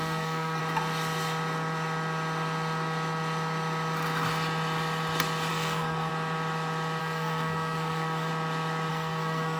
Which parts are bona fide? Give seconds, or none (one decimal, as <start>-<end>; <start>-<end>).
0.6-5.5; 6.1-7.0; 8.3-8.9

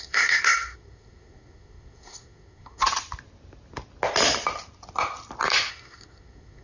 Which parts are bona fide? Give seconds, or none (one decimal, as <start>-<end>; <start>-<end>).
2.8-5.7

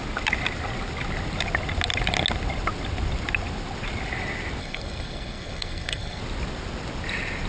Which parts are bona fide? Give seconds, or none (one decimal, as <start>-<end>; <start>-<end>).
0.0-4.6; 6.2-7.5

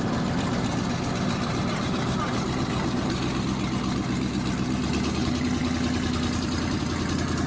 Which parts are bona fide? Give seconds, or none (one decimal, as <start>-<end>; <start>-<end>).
0.0-7.5

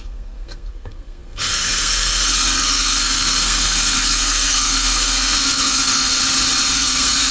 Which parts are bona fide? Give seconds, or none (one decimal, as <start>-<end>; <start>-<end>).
6.2-6.7

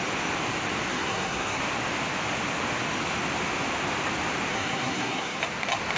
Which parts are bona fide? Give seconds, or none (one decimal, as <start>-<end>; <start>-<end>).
0.0-0.9; 1.6-4.5; 5.4-6.0